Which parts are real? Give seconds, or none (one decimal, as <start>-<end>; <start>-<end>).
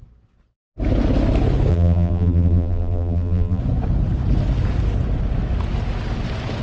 0.0-1.7; 3.6-6.6